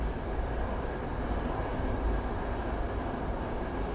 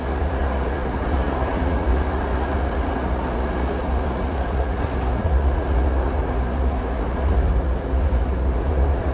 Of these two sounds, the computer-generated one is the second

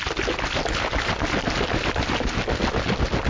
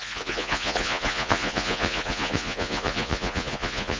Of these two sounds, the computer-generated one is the second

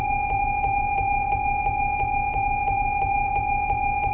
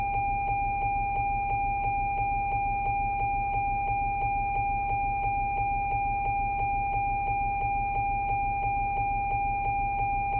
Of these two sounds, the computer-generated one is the first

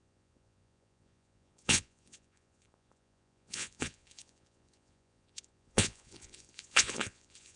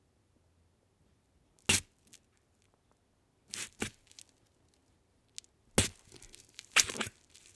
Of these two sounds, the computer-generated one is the first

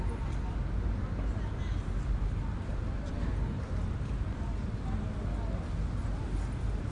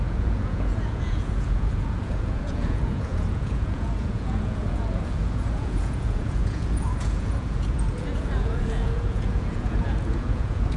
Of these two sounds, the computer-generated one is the second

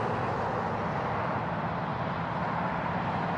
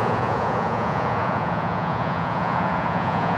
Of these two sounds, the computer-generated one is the second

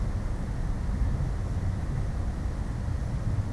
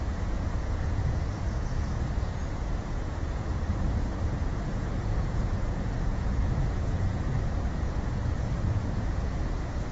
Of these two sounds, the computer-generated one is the second